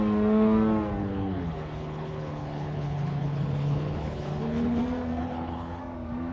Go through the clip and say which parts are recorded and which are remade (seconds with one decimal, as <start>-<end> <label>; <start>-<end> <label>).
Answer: 0.0-1.0 recorded; 1.0-4.8 remade; 4.8-5.2 recorded; 5.2-5.8 remade; 5.8-6.3 recorded